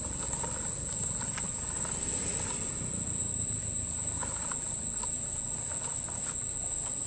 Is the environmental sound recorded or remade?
recorded